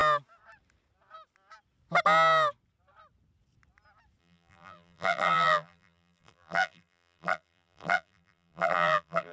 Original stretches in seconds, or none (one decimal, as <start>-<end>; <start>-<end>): 0.0-4.2